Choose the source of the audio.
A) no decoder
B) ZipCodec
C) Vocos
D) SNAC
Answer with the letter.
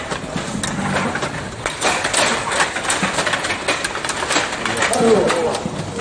A